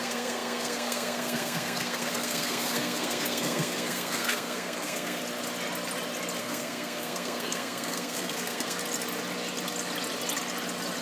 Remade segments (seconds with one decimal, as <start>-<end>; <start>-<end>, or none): 0.0-5.2; 6.4-8.8

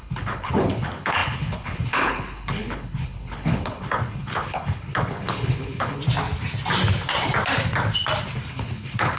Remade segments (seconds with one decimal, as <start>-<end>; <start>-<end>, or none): 0.0-6.0; 8.5-9.2

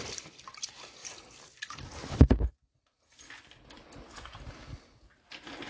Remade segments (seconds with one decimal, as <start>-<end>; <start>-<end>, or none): none

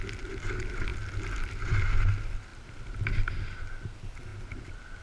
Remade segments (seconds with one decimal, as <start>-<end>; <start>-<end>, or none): none